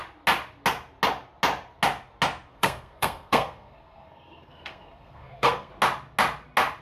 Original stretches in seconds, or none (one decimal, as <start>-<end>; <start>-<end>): 0.0-2.5; 5.7-6.8